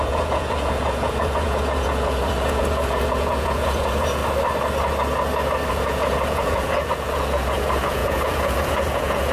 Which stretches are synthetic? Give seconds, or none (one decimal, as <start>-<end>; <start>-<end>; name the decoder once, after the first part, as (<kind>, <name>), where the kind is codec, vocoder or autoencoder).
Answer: 0.0-4.2 (vocoder, Vocos); 5.7-9.3